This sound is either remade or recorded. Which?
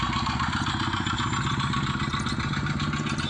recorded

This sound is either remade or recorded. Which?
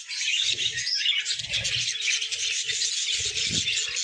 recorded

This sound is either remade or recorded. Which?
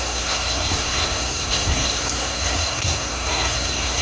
remade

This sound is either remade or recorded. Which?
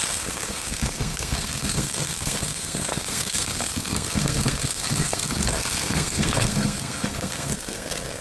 remade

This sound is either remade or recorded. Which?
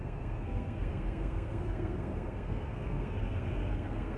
remade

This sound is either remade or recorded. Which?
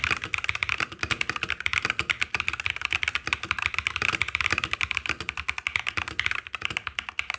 recorded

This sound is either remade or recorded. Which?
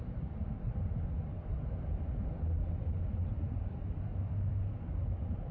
recorded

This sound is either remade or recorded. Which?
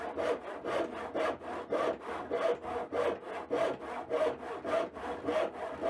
recorded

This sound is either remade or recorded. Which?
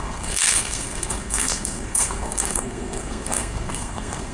remade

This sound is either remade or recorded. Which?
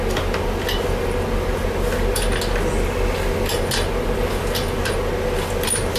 recorded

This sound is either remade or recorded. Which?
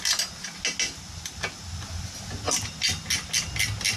recorded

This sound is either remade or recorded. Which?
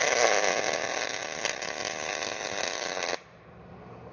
recorded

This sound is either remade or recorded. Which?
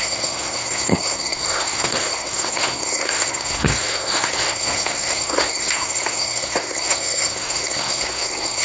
remade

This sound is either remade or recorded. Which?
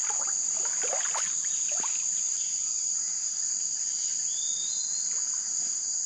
recorded